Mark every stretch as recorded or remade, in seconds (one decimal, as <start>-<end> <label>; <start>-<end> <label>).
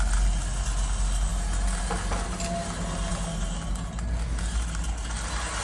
0.0-5.6 recorded